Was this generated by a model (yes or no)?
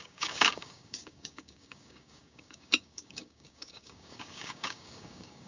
yes